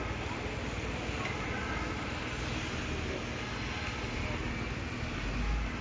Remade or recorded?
recorded